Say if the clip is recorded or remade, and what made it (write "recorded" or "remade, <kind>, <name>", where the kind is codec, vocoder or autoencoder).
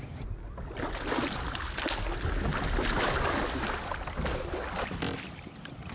recorded